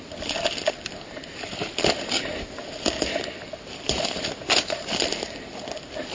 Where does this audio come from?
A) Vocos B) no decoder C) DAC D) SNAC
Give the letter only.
B